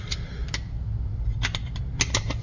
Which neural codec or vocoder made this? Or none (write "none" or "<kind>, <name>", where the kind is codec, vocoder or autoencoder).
none